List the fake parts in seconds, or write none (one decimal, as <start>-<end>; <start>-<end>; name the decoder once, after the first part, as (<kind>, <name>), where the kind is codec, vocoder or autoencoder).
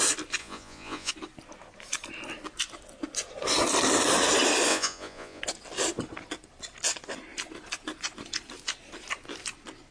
0.4-1.1 (vocoder, Vocos); 4.7-5.4